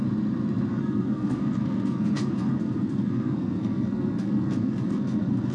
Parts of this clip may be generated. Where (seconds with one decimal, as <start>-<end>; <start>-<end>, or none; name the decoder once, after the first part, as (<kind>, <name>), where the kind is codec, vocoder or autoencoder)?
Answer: 0.7-5.5 (codec, SNAC)